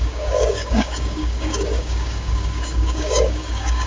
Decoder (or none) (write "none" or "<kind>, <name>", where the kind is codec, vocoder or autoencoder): codec, DAC